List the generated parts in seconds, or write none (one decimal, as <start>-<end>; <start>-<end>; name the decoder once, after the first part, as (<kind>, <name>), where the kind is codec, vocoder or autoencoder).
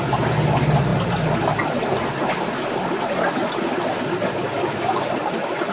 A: none